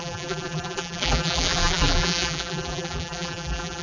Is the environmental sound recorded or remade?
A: remade